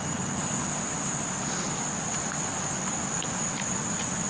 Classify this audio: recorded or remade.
recorded